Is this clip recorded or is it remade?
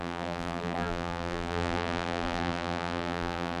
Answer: remade